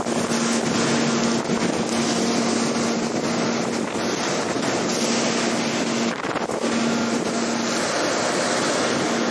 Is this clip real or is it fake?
real